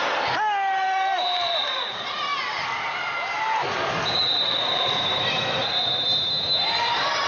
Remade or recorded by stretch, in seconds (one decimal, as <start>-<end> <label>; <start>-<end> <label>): 0.0-2.3 remade; 2.3-4.4 recorded; 4.4-7.3 remade